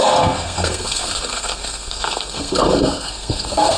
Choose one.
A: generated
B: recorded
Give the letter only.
A